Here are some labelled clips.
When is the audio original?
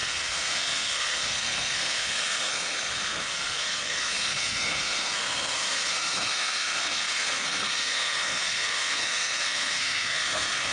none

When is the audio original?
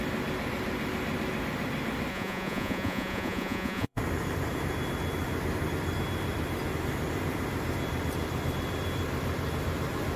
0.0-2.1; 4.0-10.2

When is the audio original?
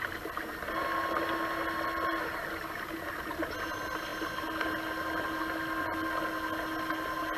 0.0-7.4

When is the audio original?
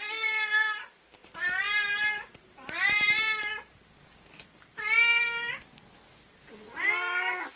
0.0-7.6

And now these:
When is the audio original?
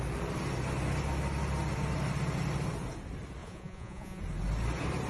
0.0-3.4; 4.2-5.1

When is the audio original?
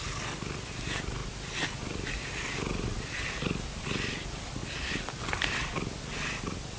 0.0-6.8